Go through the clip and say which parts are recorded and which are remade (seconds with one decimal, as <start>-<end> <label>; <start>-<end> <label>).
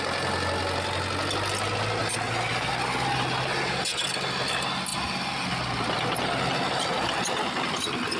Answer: 0.0-2.0 recorded; 2.0-2.7 remade; 2.7-8.2 recorded